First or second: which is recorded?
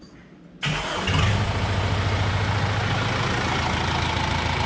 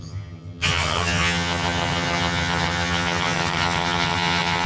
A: first